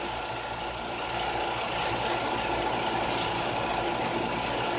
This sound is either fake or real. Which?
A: real